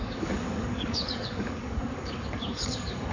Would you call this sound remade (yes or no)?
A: yes